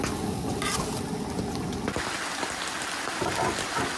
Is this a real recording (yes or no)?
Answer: yes